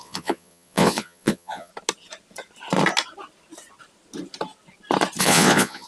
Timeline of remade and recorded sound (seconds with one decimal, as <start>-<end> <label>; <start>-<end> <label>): 0.0-1.7 remade; 1.7-5.2 recorded; 5.2-5.9 remade